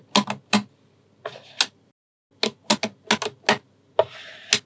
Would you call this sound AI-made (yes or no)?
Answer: no